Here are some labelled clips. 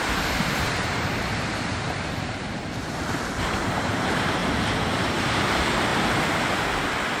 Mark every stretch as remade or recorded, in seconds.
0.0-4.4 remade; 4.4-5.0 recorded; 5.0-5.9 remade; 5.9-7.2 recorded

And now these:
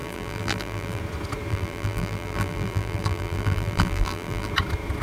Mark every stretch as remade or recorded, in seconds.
0.0-1.0 remade; 1.0-1.5 recorded; 1.5-4.5 remade; 4.5-5.0 recorded

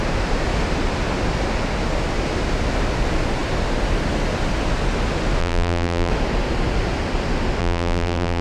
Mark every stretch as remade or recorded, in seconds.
0.0-5.4 recorded; 5.4-6.1 remade; 6.1-7.6 recorded; 7.6-8.4 remade

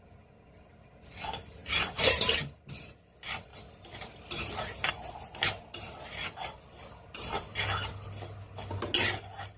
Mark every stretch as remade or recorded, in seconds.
0.0-1.6 recorded; 1.6-2.4 remade; 2.4-3.5 recorded; 3.5-4.9 remade; 4.9-9.6 recorded